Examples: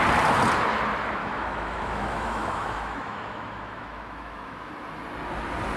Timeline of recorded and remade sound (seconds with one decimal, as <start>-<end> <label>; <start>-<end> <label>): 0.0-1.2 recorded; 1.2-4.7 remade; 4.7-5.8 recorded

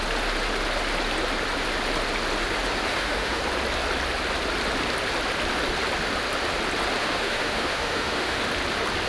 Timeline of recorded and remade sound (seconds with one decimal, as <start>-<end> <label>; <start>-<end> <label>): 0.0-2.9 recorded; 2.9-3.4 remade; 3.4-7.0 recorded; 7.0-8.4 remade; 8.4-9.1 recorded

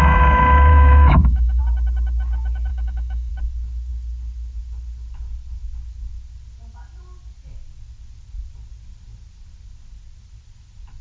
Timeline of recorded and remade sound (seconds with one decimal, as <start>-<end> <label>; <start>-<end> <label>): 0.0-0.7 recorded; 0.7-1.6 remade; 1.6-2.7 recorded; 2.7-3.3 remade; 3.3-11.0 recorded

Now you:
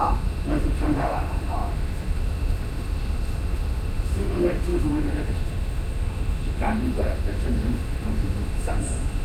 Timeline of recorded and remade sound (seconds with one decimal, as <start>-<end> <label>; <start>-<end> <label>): 0.0-9.2 remade

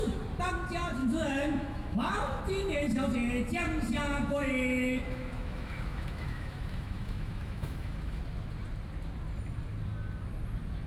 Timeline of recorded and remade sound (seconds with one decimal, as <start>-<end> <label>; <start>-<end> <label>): 0.0-1.0 recorded; 1.0-2.4 remade; 2.4-4.2 recorded; 4.2-8.2 remade; 8.2-10.9 recorded

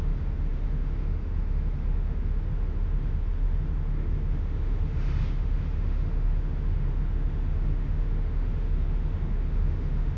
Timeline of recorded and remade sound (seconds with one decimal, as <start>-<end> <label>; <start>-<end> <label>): 0.0-10.2 remade

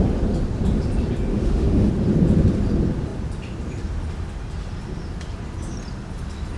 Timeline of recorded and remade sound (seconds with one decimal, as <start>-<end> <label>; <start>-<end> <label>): 0.0-1.3 recorded; 1.3-1.9 remade; 1.9-6.6 recorded